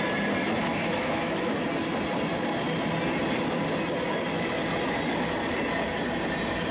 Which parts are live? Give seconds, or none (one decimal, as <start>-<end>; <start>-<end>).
0.0-0.6; 1.5-6.7